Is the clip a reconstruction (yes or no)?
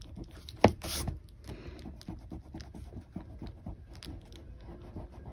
no